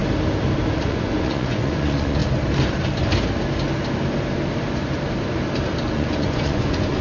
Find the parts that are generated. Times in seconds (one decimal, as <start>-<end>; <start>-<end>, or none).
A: 0.7-2.2; 5.8-7.0